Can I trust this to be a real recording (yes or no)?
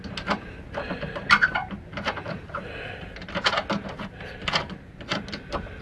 yes